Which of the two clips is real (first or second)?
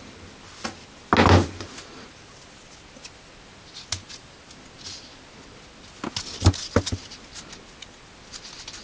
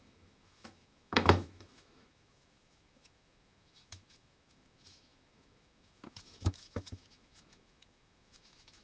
first